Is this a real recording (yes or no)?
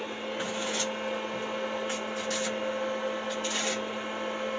yes